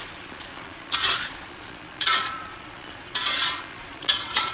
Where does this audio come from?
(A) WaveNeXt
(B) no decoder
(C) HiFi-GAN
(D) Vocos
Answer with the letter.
D